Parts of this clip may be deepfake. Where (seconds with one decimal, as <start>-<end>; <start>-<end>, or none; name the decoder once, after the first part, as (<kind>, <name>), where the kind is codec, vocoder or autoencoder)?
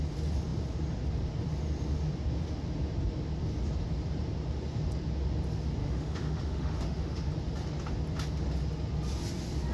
5.8-7.3 (autoencoder, DAC-VAE)